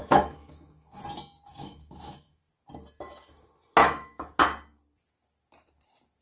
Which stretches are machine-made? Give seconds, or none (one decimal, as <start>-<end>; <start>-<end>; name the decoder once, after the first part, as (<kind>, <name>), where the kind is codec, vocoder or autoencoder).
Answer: 0.0-1.0 (autoencoder, DAC-VAE); 1.5-2.5; 3.8-4.4